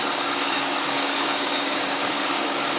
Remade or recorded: remade